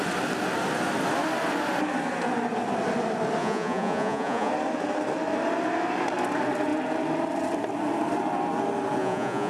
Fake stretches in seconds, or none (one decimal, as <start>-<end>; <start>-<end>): 3.4-4.5; 9.0-9.5